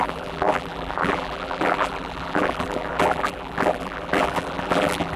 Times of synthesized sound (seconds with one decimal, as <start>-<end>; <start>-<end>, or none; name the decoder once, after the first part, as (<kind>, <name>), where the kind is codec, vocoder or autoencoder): 0.0-5.2 (vocoder, BigVGAN v2)